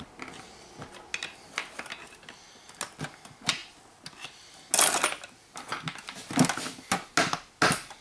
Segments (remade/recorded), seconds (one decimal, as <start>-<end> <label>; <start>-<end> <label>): 0.0-8.0 recorded